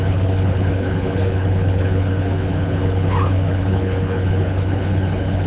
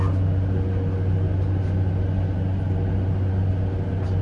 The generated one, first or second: first